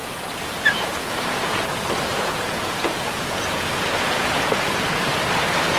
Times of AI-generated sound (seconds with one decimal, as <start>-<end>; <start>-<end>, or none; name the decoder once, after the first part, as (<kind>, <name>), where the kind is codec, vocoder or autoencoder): 0.0-1.7 (vocoder, Vocos); 2.1-5.2